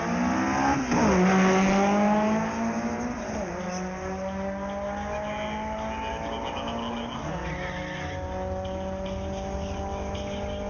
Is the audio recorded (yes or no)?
yes